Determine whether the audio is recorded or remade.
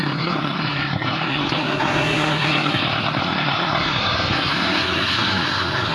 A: remade